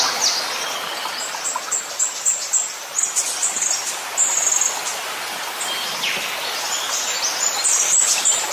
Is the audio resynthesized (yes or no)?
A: no